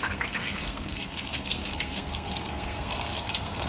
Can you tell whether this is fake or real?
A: fake